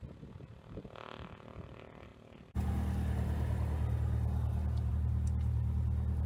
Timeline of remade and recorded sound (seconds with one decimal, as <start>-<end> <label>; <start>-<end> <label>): 0.0-6.3 recorded